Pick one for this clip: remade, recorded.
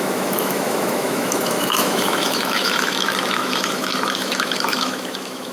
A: remade